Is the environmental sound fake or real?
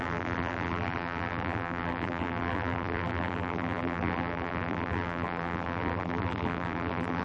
fake